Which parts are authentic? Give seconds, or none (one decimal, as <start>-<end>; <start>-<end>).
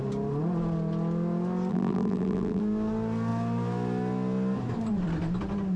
0.0-1.7; 2.6-5.8